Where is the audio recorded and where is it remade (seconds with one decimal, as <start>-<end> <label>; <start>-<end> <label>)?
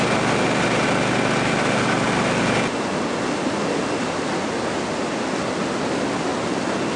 0.0-7.0 recorded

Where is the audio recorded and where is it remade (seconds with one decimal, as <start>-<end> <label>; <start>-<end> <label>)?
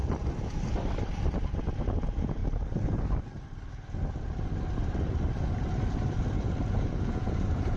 0.0-2.0 recorded; 2.0-2.4 remade; 2.4-6.8 recorded; 6.8-7.8 remade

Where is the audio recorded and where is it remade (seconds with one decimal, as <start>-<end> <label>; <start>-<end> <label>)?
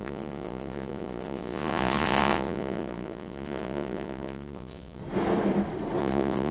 0.0-5.0 remade; 5.0-6.0 recorded; 6.0-6.5 remade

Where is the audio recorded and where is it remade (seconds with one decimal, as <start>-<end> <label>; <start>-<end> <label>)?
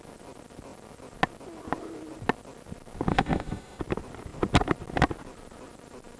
0.0-3.1 recorded; 3.1-3.8 remade; 3.8-6.2 recorded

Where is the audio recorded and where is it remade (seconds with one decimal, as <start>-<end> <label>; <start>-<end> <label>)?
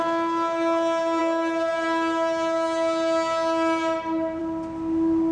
0.0-5.3 recorded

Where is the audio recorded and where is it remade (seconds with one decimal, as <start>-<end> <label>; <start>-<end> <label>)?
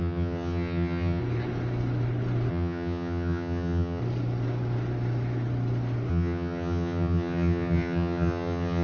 0.0-1.2 remade; 1.2-2.5 recorded; 2.5-4.0 remade; 4.0-6.1 recorded; 6.1-8.8 remade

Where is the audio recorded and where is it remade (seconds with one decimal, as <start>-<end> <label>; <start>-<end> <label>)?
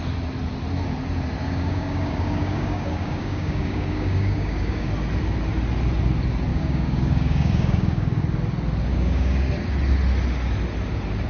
0.0-1.4 recorded; 1.4-4.9 remade; 4.9-6.5 recorded; 6.5-8.2 remade; 8.2-8.9 recorded; 8.9-9.5 remade; 9.5-11.3 recorded